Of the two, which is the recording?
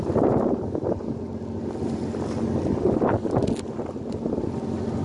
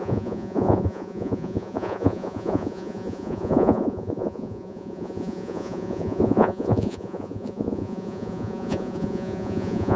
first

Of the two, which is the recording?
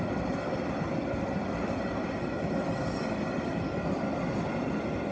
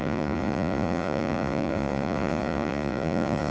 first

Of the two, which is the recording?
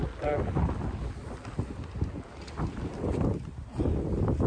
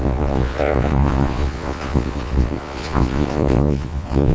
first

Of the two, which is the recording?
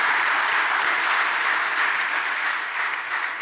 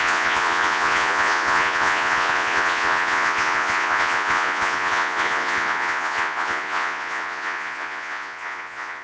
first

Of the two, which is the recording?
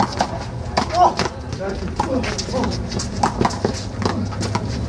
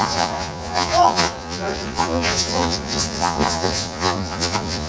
first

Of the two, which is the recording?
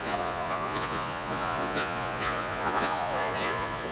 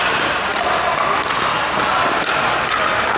second